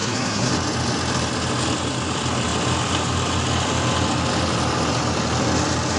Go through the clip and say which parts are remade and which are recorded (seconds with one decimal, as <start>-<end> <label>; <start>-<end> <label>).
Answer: 0.0-0.5 remade; 0.5-6.0 recorded